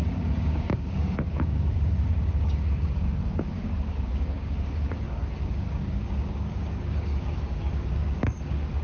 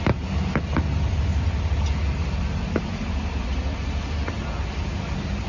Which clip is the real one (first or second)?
second